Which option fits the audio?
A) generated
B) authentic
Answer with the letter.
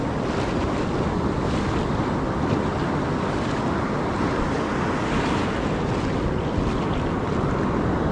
B